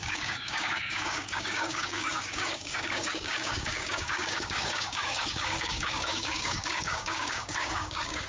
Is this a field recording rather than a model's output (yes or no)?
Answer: no